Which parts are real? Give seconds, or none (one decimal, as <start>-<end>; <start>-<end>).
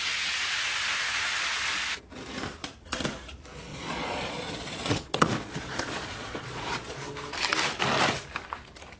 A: 0.0-3.7; 7.0-9.0